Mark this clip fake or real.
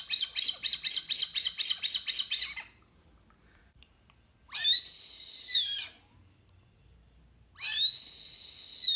real